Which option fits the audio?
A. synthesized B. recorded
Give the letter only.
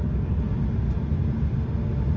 B